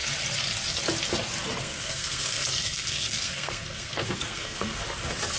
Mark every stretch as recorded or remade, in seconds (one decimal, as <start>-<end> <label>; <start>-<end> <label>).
0.0-1.6 recorded; 1.6-4.8 remade; 4.8-5.4 recorded